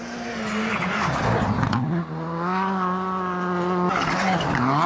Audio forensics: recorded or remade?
recorded